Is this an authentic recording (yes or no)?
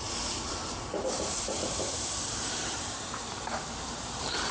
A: no